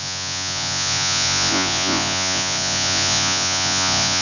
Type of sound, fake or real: fake